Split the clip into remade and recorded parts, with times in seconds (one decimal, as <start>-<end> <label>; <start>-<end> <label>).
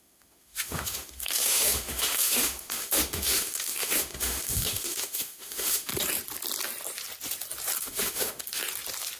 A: 0.0-5.9 remade; 5.9-7.8 recorded; 7.8-8.6 remade; 8.6-9.2 recorded